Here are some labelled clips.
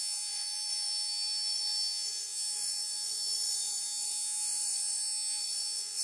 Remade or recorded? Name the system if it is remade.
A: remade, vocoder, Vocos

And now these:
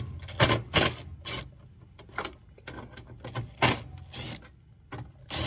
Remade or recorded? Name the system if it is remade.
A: recorded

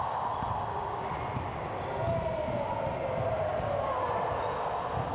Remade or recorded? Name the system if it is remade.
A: recorded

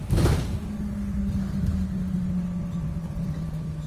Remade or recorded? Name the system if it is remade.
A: recorded